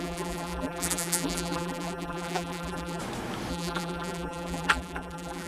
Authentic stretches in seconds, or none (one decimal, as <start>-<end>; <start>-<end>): 3.0-3.5